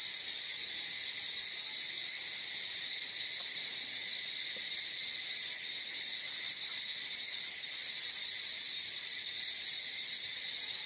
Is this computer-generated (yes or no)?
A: no